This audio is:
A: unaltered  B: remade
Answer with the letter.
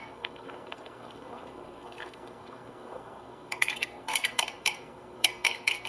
B